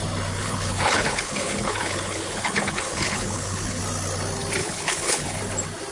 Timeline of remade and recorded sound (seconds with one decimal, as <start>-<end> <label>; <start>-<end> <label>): 0.0-0.4 recorded; 0.4-3.8 remade; 3.8-4.6 recorded; 4.6-5.4 remade; 5.4-5.9 recorded